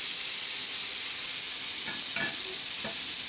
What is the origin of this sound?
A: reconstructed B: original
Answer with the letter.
B